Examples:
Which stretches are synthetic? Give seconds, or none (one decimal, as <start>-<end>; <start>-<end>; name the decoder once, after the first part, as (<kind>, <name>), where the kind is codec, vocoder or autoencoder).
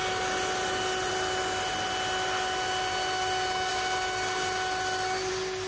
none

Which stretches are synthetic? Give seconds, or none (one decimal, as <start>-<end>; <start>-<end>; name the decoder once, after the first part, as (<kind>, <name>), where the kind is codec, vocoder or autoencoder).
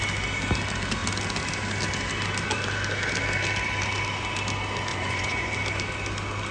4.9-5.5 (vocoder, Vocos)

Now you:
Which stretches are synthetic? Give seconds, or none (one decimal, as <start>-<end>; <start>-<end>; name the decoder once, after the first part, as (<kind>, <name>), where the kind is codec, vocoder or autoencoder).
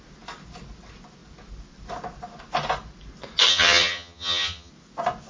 3.5-4.7 (vocoder, HiFi-GAN)